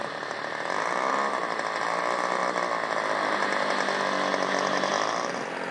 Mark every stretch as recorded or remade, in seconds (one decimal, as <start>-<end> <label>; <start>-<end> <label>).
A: 0.0-5.7 recorded